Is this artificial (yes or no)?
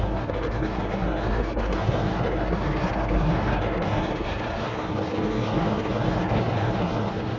yes